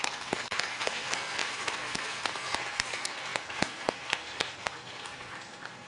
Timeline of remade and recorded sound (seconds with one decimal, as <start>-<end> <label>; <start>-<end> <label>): 0.0-5.9 remade